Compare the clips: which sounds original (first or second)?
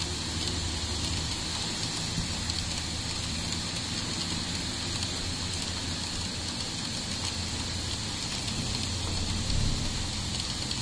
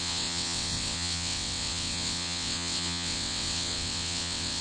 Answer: first